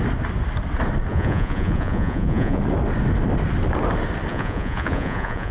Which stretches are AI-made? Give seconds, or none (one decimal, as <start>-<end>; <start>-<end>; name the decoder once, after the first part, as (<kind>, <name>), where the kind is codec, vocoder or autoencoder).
1.1-2.6 (vocoder, Vocos); 4.3-5.5